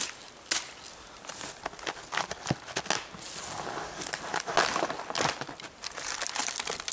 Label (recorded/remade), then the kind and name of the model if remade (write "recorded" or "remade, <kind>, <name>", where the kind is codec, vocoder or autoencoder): recorded